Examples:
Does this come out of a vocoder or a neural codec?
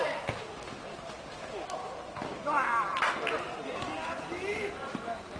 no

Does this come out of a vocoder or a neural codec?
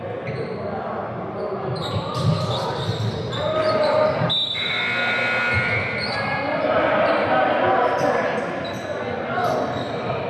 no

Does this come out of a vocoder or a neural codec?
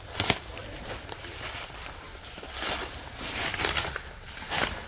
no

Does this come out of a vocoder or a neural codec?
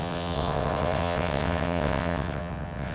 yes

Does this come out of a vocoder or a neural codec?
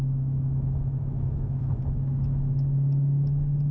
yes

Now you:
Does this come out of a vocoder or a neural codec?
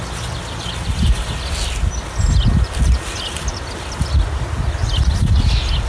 no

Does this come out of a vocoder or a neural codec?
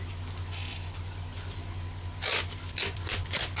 no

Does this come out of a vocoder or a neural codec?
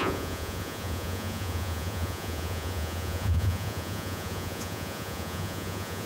yes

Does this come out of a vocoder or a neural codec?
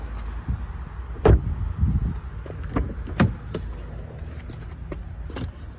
no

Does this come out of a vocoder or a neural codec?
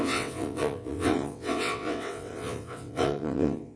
yes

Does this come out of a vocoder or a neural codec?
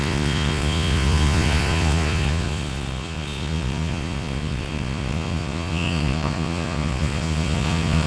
yes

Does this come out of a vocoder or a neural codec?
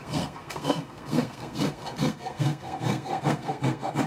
yes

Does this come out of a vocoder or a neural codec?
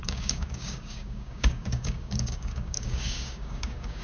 yes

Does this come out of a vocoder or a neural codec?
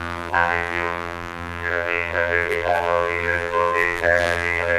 yes